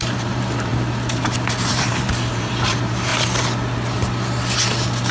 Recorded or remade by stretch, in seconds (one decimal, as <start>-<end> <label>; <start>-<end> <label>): 0.0-0.7 remade; 0.7-1.7 recorded; 1.7-3.1 remade; 3.1-5.1 recorded